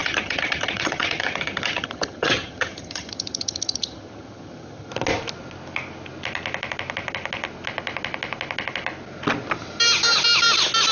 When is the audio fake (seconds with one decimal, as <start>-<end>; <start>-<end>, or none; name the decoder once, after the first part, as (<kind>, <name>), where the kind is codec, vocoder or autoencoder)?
0.0-4.9 (vocoder, HiFi-GAN)